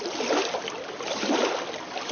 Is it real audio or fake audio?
real